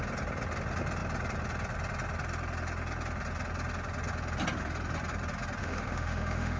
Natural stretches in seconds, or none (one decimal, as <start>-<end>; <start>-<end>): 0.0-5.6